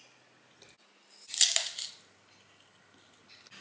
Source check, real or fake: real